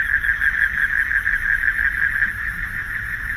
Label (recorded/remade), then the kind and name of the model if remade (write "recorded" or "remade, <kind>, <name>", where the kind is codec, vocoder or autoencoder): recorded